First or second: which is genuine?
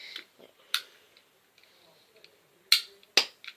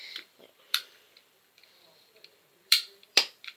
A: first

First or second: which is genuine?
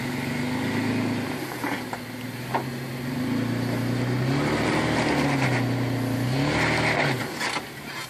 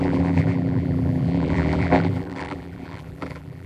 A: first